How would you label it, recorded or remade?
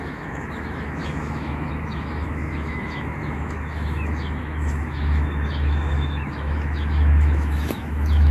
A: remade